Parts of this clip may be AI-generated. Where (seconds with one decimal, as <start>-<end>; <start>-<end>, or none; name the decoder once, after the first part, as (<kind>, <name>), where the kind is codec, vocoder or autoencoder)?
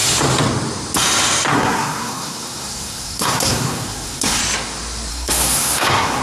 1.5-4.4 (codec, SNAC); 5.1-6.2